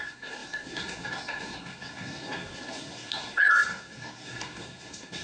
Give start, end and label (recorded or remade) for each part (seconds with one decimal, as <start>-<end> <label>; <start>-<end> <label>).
0.0-5.2 remade